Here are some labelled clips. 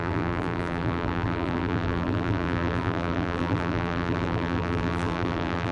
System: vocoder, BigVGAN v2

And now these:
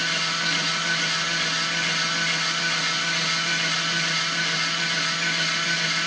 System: none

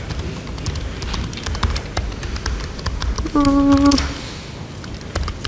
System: none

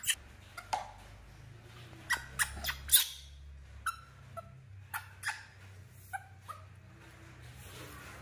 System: none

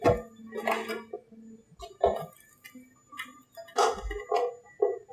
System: none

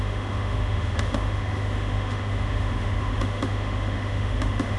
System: autoencoder, DAC-VAE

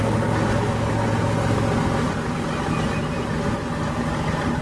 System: none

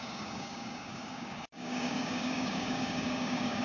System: codec, DAC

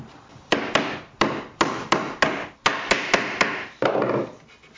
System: none